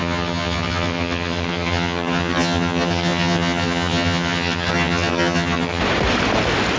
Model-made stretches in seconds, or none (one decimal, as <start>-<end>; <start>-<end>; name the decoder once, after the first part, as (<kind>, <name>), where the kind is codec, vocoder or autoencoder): 0.0-5.8 (vocoder, HiFi-GAN)